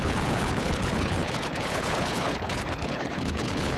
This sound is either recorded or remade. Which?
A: remade